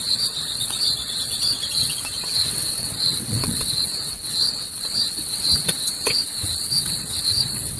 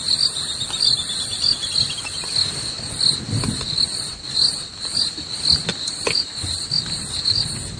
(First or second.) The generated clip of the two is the first